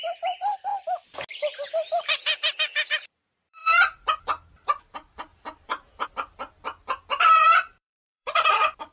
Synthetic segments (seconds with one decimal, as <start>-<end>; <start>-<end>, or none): 0.0-0.7; 1.4-2.3; 2.9-3.6; 4.5-5.3; 7.2-8.9